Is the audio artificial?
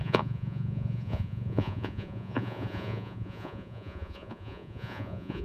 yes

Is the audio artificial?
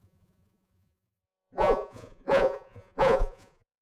yes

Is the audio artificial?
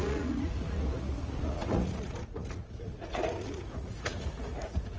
yes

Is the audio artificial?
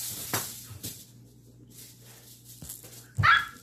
no